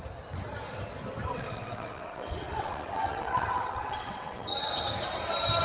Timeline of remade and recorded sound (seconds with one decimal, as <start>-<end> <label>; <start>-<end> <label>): 0.0-1.3 recorded; 1.3-4.7 remade; 4.7-5.6 recorded